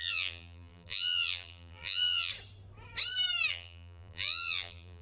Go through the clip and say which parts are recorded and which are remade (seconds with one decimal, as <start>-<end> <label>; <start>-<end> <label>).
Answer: 0.0-2.3 remade; 2.3-3.5 recorded; 3.5-5.0 remade